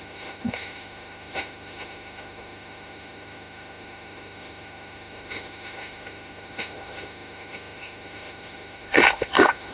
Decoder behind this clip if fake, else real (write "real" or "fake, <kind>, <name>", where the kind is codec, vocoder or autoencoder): fake, autoencoder, DAC-VAE